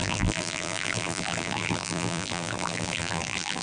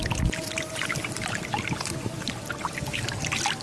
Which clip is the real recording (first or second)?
second